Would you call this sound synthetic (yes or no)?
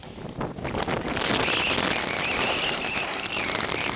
no